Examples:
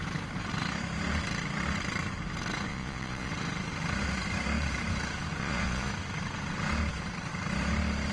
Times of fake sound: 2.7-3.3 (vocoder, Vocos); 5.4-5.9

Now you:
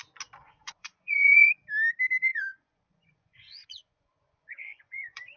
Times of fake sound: 0.4-1.5 (vocoder, Vocos); 2.3-5.4

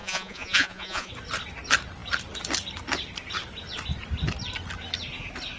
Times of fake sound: 0.0-1.1 (vocoder, Vocos)

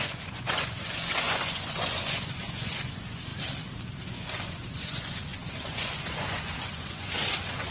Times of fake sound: 0.0-3.3 (vocoder, Vocos); 4.1-7.7

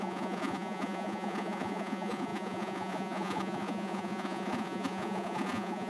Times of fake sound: 0.0-5.9 (vocoder, Vocos)

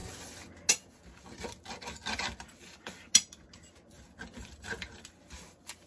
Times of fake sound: none

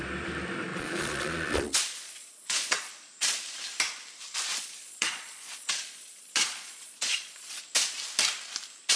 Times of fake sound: 0.7-2.9 (vocoder, Vocos); 4.5-7.6